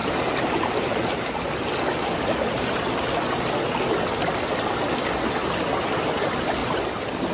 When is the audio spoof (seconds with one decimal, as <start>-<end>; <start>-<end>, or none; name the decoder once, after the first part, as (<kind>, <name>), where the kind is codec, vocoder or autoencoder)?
0.0-1.2 (vocoder, BigVGAN v2); 6.6-7.3